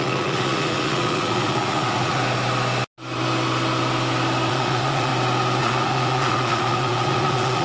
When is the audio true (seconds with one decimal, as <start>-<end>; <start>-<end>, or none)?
2.2-4.5; 5.1-5.6